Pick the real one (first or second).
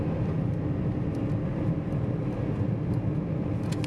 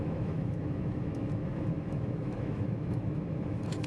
first